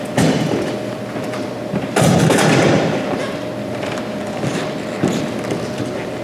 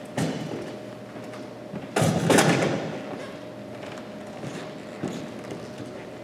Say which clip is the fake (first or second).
first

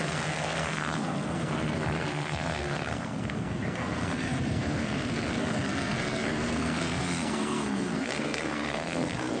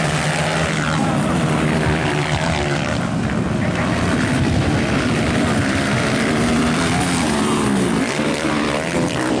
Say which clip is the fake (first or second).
first